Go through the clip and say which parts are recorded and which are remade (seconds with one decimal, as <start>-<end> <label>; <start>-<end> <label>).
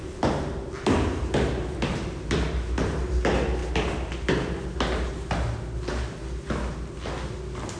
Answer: 0.0-7.8 recorded